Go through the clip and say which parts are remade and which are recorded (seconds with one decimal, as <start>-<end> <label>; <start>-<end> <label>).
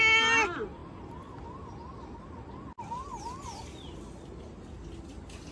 0.0-5.5 recorded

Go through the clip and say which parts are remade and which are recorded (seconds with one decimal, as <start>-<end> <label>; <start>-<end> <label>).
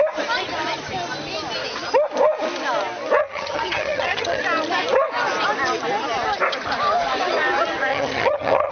0.0-3.2 recorded; 3.2-4.4 remade; 4.4-7.9 recorded; 7.9-8.7 remade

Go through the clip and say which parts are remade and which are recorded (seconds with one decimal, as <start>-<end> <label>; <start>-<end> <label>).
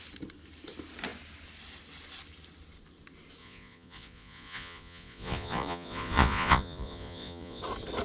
0.0-3.4 recorded; 3.4-7.6 remade; 7.6-8.0 recorded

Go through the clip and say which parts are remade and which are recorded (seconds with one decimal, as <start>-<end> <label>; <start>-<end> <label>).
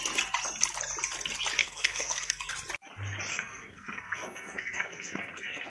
0.0-1.6 recorded; 1.6-2.5 remade; 2.5-3.3 recorded; 3.3-5.7 remade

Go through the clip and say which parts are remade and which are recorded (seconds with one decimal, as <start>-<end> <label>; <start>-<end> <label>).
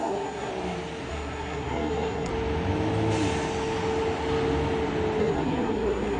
0.0-0.5 remade; 0.5-1.1 recorded; 1.1-2.3 remade; 2.3-5.2 recorded; 5.2-6.2 remade